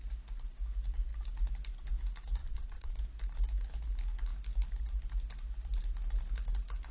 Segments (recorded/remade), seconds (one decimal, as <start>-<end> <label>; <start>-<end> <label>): 0.0-2.4 recorded; 2.4-3.0 remade; 3.0-6.9 recorded